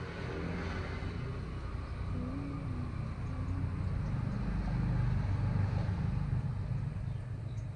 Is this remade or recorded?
recorded